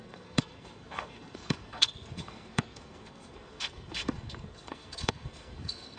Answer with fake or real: fake